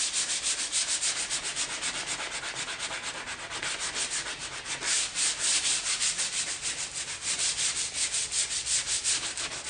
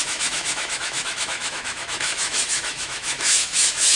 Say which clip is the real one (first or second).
first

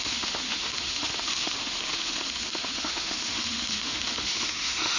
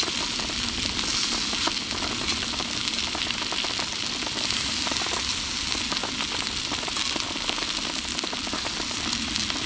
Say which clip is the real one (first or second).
second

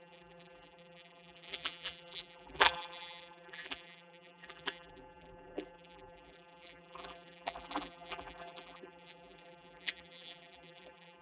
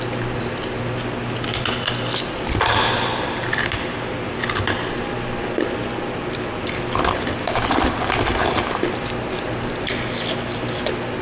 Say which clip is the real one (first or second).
second